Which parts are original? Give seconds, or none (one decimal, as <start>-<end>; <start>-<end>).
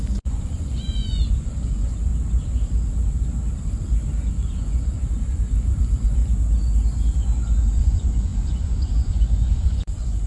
2.1-4.3; 6.2-7.6